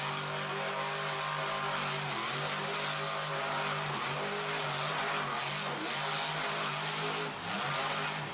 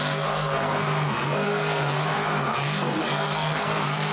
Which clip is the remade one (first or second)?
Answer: second